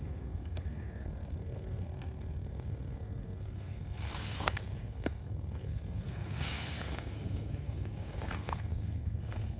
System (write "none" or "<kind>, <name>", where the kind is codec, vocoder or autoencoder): codec, SNAC